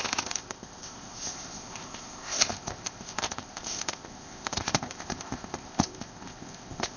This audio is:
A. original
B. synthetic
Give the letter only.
B